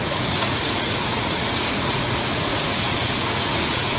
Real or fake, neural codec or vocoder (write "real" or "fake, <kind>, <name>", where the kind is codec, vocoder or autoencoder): fake, vocoder, Vocos